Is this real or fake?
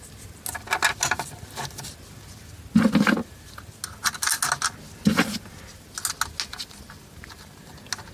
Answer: real